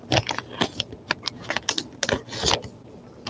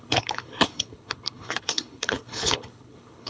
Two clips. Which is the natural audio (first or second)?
first